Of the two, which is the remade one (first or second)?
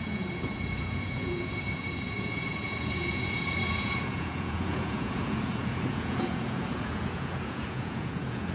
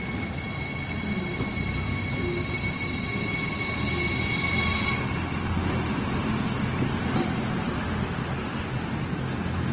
first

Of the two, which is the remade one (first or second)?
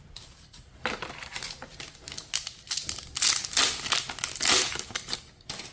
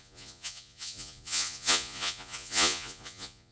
second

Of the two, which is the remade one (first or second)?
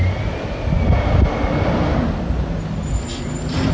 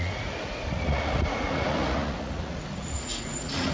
second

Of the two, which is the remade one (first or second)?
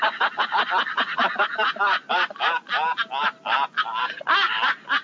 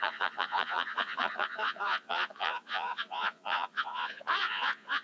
second